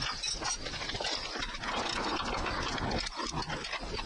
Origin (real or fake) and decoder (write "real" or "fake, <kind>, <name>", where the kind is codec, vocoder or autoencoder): real